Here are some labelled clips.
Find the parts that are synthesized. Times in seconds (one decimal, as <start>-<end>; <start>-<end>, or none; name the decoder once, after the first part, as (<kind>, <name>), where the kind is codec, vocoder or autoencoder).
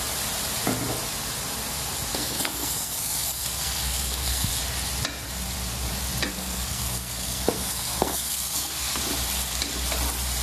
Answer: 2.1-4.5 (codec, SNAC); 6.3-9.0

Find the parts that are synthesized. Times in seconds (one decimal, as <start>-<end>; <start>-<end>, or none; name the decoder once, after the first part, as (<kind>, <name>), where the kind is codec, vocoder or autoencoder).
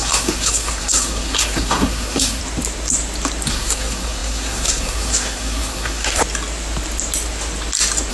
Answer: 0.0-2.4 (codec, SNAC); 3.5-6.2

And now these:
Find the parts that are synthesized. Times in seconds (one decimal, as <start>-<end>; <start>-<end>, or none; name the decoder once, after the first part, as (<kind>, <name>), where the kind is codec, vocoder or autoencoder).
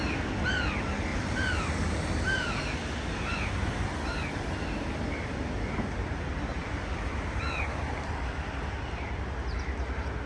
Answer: 1.1-2.9 (vocoder, BigVGAN v2); 6.5-8.6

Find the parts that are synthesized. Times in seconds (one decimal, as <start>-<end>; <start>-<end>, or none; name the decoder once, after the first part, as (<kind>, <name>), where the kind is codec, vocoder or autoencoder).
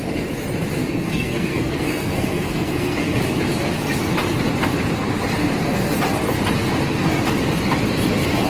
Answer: 0.8-3.2 (codec, SNAC)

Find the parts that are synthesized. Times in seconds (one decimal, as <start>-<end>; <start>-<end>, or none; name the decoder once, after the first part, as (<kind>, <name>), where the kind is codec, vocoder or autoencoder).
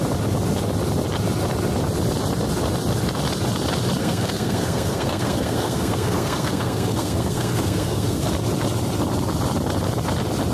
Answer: 4.0-8.3 (codec, SNAC)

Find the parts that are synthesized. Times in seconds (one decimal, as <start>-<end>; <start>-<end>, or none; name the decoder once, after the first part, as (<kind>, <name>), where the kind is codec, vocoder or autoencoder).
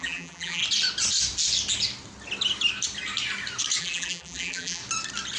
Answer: 0.0-0.6 (vocoder, BigVGAN v2); 3.8-4.8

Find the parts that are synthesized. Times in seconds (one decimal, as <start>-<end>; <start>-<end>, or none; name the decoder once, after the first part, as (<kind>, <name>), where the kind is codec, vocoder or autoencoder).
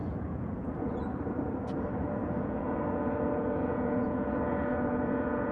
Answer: 0.0-0.9 (vocoder, Vocos); 2.2-5.5